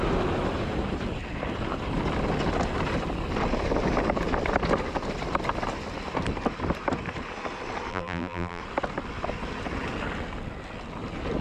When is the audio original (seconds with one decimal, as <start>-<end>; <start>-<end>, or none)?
0.0-7.9; 8.6-11.4